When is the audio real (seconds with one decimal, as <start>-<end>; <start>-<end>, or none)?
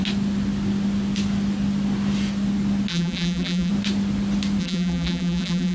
0.0-2.9; 3.7-4.6